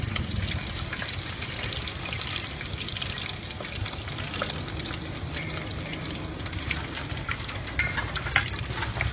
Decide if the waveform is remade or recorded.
recorded